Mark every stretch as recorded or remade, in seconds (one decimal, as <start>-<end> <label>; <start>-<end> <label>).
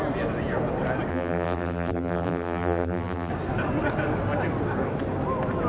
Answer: 0.0-1.1 recorded; 1.1-3.3 remade; 3.3-5.7 recorded